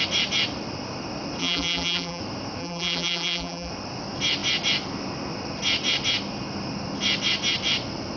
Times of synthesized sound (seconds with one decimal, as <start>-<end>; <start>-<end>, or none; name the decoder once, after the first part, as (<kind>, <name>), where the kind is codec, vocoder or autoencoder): 1.4-2.2 (vocoder, BigVGAN v2); 2.6-3.7